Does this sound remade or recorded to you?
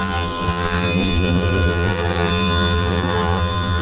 remade